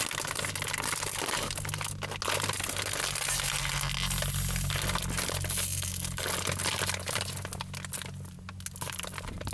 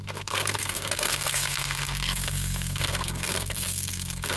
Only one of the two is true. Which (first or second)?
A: first